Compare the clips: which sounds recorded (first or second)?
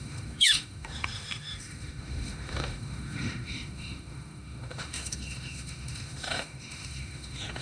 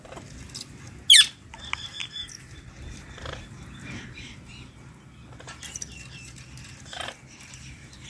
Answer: second